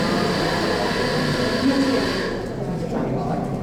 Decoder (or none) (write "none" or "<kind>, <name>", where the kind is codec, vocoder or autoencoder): none